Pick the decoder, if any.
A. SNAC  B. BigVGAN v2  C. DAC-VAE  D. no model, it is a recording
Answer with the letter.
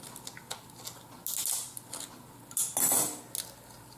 D